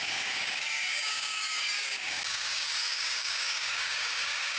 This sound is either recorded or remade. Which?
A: remade